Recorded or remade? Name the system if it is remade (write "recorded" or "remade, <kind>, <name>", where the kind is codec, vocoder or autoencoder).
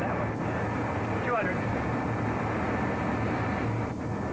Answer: recorded